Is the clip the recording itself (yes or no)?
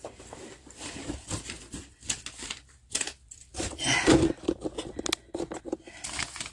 yes